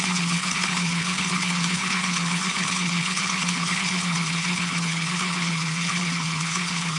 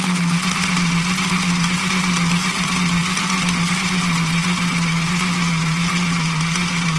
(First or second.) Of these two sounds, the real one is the second